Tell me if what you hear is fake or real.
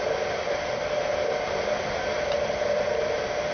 real